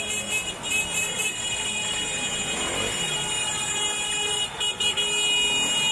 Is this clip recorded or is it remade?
recorded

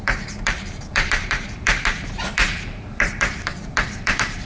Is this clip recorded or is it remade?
remade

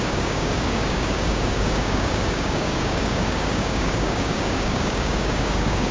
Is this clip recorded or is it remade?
remade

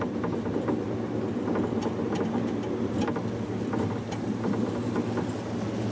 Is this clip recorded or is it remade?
recorded